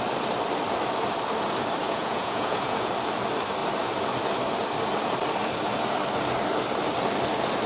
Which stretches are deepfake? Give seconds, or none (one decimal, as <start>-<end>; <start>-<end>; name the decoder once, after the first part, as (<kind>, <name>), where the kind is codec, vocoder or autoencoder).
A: 1.8-2.9 (vocoder, Vocos)

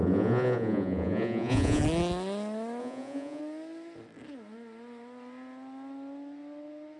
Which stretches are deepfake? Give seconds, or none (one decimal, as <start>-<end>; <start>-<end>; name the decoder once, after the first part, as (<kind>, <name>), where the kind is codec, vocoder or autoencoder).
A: 0.0-1.8 (vocoder, Vocos); 2.8-3.4

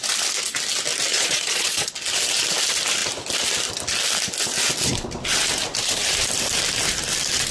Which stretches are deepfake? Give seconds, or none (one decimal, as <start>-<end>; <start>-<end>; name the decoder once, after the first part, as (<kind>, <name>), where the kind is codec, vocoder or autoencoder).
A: 1.1-1.9 (vocoder, Vocos)

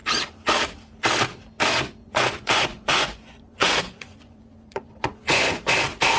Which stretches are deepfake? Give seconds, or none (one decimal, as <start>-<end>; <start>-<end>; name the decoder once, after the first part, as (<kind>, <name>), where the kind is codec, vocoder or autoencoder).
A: 2.0-5.7 (vocoder, Vocos)

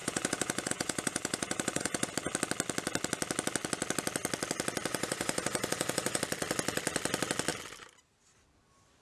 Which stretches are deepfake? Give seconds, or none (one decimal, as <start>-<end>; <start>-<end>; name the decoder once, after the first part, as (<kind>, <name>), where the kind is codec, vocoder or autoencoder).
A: 0.0-2.1 (vocoder, Vocos); 4.9-6.2

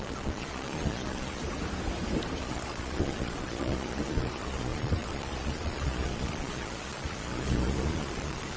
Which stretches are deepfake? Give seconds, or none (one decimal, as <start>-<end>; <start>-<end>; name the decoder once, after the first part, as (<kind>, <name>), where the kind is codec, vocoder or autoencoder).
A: 0.0-1.4 (vocoder, Vocos); 2.4-8.6

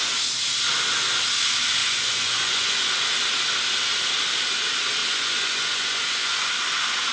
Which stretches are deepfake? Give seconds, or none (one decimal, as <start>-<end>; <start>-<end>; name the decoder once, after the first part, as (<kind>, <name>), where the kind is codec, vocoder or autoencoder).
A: 1.8-2.9 (vocoder, Vocos); 5.0-6.5

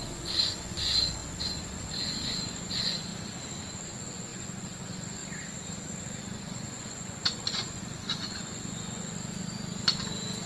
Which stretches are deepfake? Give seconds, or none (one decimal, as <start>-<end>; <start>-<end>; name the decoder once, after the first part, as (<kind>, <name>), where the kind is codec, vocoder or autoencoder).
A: 0.0-3.1 (vocoder, Vocos); 3.8-5.2; 6.2-10.5